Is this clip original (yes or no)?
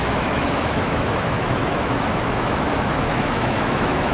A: no